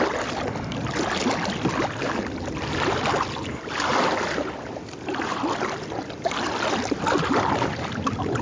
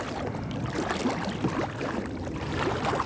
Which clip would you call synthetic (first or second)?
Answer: second